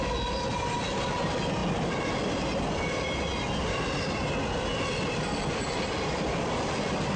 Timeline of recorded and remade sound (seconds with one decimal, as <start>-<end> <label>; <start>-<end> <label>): 0.0-7.2 recorded